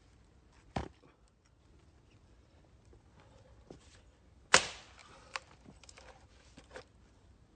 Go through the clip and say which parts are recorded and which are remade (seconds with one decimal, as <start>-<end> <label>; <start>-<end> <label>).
0.0-7.6 recorded